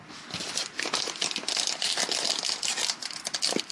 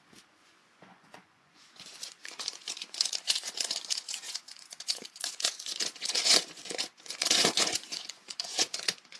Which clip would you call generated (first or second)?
second